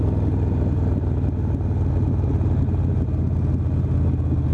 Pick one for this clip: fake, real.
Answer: real